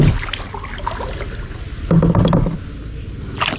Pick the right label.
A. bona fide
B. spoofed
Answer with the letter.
A